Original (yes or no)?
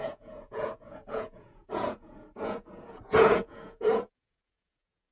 no